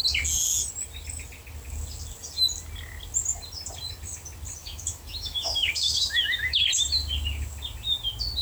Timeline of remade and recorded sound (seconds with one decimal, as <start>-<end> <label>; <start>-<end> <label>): 0.0-4.6 recorded; 4.6-6.6 remade; 6.6-8.4 recorded